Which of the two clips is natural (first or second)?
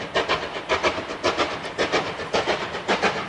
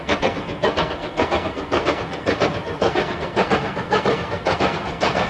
first